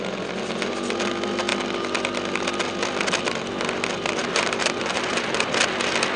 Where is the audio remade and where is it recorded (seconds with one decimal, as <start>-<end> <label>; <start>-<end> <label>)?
0.0-4.2 recorded; 4.2-5.5 remade; 5.5-6.2 recorded